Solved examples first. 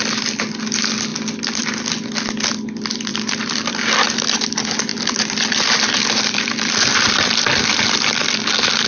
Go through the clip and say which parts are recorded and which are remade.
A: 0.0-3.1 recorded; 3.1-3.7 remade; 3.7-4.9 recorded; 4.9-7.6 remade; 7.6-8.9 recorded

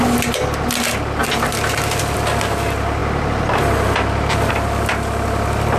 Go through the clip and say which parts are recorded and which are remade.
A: 0.0-1.2 recorded; 1.2-2.0 remade; 2.0-5.8 recorded

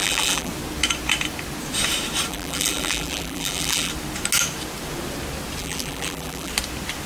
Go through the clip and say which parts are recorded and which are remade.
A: 0.0-0.5 remade; 0.5-2.3 recorded; 2.3-3.9 remade; 3.9-5.6 recorded; 5.6-6.5 remade; 6.5-7.1 recorded

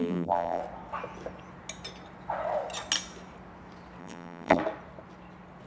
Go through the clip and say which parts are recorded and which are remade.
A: 0.0-0.6 remade; 0.6-4.0 recorded; 4.0-4.6 remade; 4.6-5.7 recorded

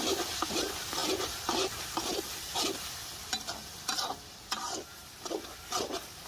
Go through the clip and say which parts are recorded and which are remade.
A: 0.0-1.0 recorded; 1.0-2.7 remade; 2.7-6.3 recorded

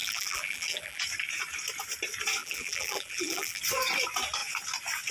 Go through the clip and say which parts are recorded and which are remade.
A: 0.0-1.0 remade; 1.0-2.4 recorded; 2.4-3.6 remade; 3.6-5.1 recorded

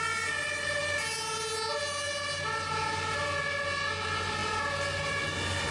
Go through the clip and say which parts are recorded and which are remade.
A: 0.0-5.7 recorded